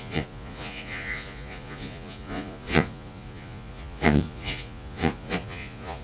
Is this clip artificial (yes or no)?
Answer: yes